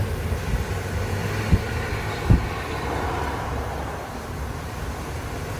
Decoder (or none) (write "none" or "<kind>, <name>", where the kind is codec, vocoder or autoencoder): none